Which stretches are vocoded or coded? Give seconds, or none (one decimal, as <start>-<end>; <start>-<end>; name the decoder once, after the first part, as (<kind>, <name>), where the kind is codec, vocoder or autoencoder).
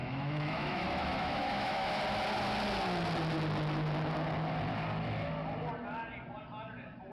0.0-2.0 (autoencoder, DAC-VAE)